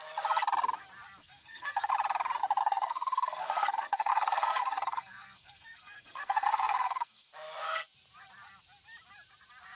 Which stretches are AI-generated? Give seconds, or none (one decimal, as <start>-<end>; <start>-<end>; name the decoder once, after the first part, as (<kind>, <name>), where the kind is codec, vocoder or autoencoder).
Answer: 1.2-1.9 (codec, SNAC); 2.6-7.3